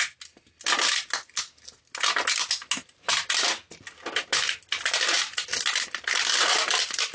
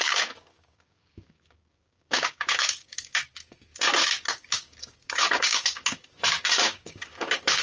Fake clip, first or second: second